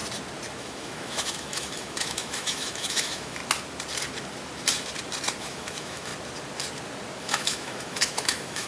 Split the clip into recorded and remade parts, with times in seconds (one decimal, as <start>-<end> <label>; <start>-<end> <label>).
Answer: 0.0-0.6 recorded; 0.6-3.4 remade; 3.4-5.4 recorded; 5.4-6.1 remade; 6.1-7.2 recorded; 7.2-8.7 remade